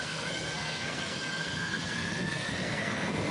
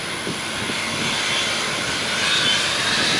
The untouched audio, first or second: second